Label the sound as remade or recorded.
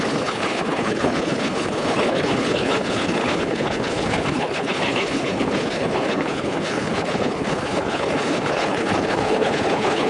remade